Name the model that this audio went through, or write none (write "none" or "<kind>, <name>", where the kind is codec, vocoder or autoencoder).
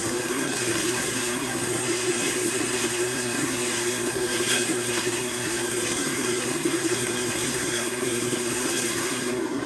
codec, SNAC